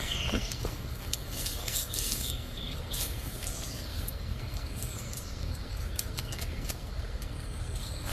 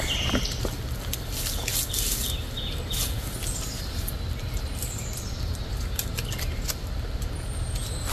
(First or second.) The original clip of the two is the second